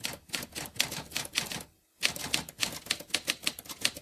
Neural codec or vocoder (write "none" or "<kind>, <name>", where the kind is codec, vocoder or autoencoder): none